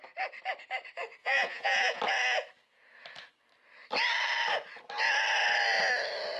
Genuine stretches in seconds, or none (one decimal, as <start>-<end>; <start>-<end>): 0.0-1.2; 2.0-6.4